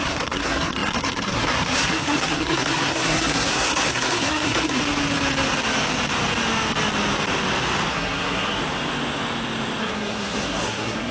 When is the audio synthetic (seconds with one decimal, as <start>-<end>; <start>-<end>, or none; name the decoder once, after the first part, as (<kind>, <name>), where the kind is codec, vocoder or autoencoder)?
0.0-4.8 (codec, SNAC); 7.9-8.6; 9.8-11.1